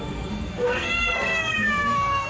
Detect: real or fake fake